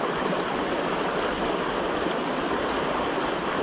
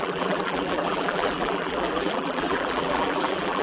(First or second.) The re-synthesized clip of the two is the second